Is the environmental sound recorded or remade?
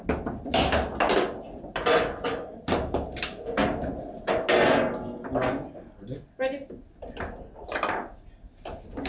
recorded